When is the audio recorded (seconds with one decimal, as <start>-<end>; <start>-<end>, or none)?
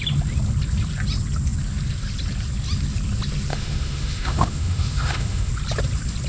0.0-3.5; 5.5-6.3